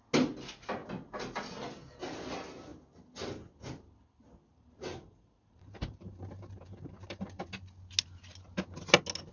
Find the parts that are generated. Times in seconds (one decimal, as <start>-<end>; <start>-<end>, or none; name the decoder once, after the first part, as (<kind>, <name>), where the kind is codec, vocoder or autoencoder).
4.5-7.4 (vocoder, BigVGAN v2)